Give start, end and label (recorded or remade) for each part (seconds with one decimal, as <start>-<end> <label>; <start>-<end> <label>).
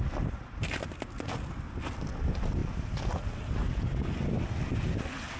0.0-5.4 recorded